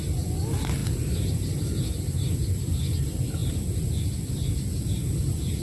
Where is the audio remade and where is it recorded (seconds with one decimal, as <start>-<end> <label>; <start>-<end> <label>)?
0.0-5.6 recorded